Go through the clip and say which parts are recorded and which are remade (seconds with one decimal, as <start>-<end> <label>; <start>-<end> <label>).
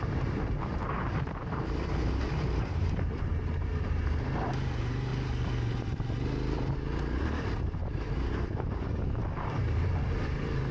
0.0-5.1 remade; 5.1-7.2 recorded; 7.2-10.7 remade